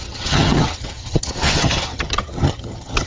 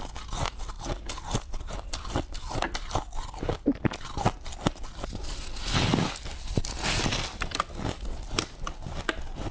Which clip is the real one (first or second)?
second